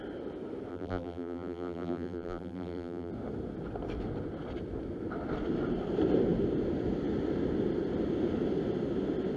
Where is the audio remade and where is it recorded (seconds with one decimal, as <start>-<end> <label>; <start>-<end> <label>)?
0.0-0.7 recorded; 0.7-3.1 remade; 3.1-9.4 recorded